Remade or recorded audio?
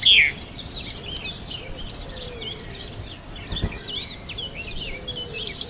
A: recorded